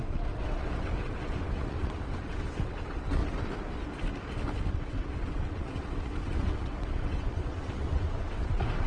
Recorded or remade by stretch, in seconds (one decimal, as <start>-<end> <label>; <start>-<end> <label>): 0.0-3.2 remade; 3.2-4.7 recorded; 4.7-8.9 remade